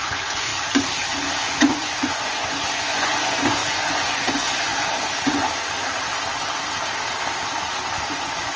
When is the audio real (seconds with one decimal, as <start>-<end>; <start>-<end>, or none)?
0.5-1.4; 4.7-8.1